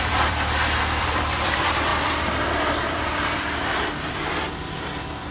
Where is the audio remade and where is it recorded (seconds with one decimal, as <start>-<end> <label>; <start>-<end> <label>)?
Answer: 0.0-5.3 remade